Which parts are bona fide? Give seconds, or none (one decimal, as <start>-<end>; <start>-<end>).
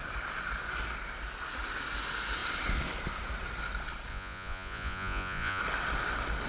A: 0.0-4.1; 5.6-6.5